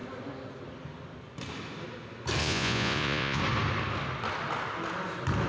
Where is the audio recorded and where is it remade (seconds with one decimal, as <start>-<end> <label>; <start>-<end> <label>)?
0.0-2.4 recorded; 2.4-3.4 remade; 3.4-5.5 recorded